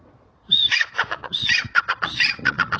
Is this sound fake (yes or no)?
yes